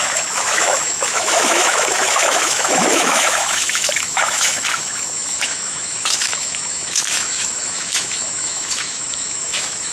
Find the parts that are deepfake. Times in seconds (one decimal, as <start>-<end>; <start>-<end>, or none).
0.0-9.9